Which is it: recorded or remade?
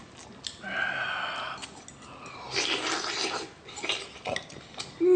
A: recorded